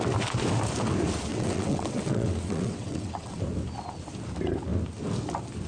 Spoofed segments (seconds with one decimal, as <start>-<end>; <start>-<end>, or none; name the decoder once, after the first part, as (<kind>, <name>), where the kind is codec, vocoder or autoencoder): 1.3-3.4 (vocoder, WaveNeXt)

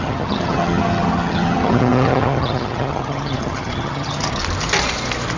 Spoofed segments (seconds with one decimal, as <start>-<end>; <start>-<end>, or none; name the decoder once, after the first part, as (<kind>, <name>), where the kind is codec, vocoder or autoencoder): 0.0-4.4 (vocoder, HiFi-GAN)

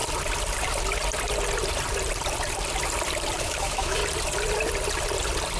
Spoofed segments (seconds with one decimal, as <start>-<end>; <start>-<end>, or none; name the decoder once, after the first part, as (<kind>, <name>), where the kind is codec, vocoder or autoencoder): 3.4-4.0 (autoencoder, DAC-VAE)

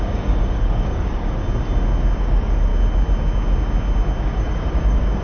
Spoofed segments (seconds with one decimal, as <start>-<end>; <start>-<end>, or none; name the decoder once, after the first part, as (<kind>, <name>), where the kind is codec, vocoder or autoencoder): 0.0-1.4 (codec, DAC); 2.2-2.7; 4.2-5.2

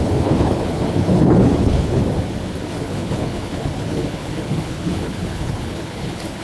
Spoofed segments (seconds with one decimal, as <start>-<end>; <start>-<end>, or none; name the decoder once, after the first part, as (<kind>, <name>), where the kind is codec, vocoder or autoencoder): 0.0-2.0 (codec, HILCodec); 2.7-6.4

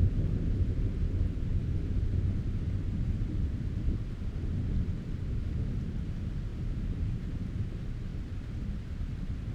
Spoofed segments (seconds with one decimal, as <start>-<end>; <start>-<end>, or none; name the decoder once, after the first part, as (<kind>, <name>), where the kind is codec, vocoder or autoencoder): 6.5-7.3 (vocoder, BigVGAN v2); 8.1-9.1